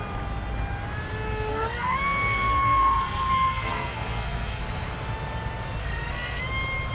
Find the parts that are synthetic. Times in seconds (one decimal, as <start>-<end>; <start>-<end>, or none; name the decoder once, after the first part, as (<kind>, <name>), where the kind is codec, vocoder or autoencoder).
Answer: 1.5-4.6 (codec, SNAC); 5.8-6.4